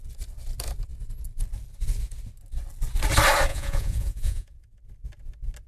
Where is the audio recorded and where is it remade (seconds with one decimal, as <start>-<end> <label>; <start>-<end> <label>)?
0.0-3.5 recorded; 3.5-4.8 remade; 4.8-5.7 recorded